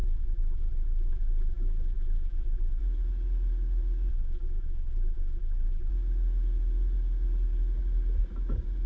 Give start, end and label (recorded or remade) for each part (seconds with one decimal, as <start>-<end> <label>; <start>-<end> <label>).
0.0-2.8 remade; 2.8-4.1 recorded; 4.1-5.9 remade; 5.9-8.9 recorded

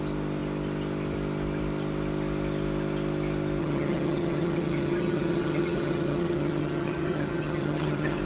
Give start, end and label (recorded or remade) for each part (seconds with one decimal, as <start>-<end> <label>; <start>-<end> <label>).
0.0-3.6 recorded; 3.6-8.2 remade

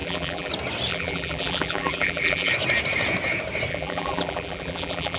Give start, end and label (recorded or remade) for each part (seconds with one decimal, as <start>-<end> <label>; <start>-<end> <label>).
0.0-0.5 remade; 0.5-0.9 recorded; 0.9-2.5 remade; 2.5-3.7 recorded; 3.7-5.2 remade

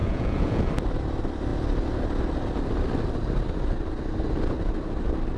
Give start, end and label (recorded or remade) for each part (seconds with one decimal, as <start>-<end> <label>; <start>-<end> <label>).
0.0-0.7 remade; 0.7-5.4 recorded

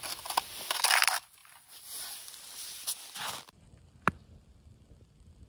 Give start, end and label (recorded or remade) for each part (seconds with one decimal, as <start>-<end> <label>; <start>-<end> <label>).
0.0-1.4 recorded; 1.4-3.0 remade; 3.0-5.5 recorded

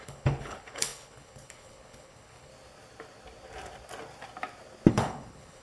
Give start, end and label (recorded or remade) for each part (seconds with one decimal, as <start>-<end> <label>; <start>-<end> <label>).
0.0-2.5 remade; 2.5-4.9 recorded; 4.9-5.6 remade

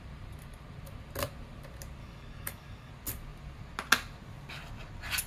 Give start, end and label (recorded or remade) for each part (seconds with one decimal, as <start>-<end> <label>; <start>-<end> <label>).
0.0-2.0 recorded; 2.0-2.9 remade; 2.9-5.3 recorded